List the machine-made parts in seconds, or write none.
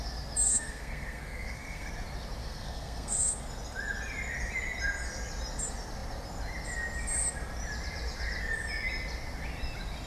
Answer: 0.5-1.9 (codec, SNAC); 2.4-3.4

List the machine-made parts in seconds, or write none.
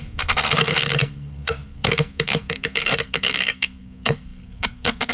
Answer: 0.0-5.1 (codec, SNAC)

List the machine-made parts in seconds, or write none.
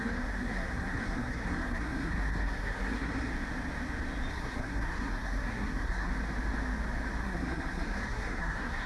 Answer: 0.0-3.3 (codec, SNAC); 4.3-6.1; 7.2-8.9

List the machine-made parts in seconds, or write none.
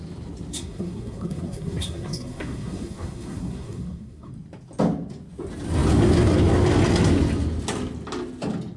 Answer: 0.5-4.3 (codec, SNAC)